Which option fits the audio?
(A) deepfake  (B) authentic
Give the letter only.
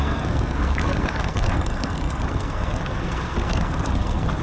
A